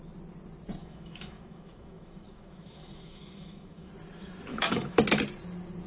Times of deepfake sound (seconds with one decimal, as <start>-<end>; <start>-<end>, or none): 0.8-3.9; 4.5-5.0

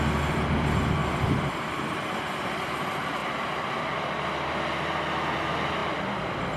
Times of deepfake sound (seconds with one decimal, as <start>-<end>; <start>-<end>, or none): 1.0-1.8; 3.2-3.7; 5.8-6.6

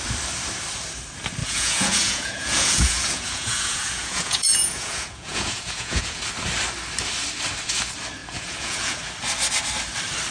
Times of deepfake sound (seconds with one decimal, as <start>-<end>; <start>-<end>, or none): 1.4-6.2; 8.2-9.0

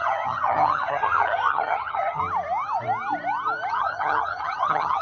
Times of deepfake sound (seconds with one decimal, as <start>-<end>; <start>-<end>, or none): 0.0-2.2; 3.7-5.0

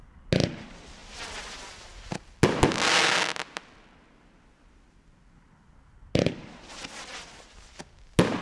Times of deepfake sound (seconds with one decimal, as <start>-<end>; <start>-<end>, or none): none